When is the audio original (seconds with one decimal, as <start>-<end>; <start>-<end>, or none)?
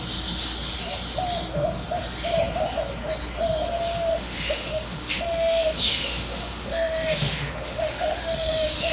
0.0-4.1